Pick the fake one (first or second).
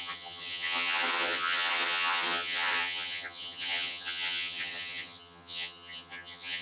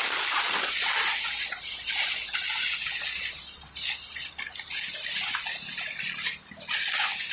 first